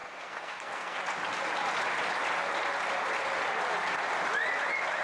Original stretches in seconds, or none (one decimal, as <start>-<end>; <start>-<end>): 1.0-5.0